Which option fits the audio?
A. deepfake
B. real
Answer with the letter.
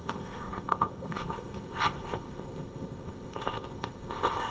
A